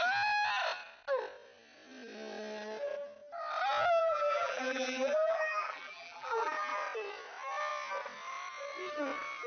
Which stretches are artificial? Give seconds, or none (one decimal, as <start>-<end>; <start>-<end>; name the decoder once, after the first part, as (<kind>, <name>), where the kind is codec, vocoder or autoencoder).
4.0-6.5 (vocoder, BigVGAN v2)